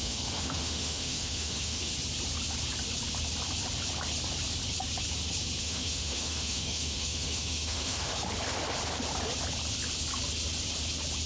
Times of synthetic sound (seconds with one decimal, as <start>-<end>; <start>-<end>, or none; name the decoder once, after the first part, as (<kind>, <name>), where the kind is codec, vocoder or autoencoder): 0.0-1.9 (autoencoder, DAC-VAE); 5.6-8.1